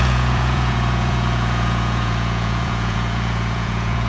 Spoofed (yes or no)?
yes